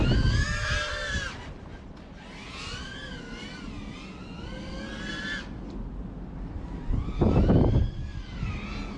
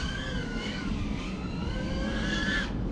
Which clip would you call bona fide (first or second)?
first